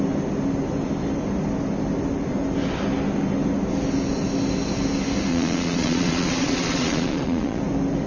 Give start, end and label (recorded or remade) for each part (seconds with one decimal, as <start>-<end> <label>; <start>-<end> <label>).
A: 0.0-5.3 recorded; 5.3-7.6 remade; 7.6-8.1 recorded